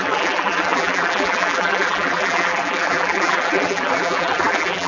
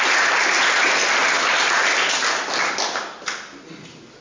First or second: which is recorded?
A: second